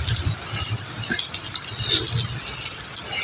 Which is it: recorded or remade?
recorded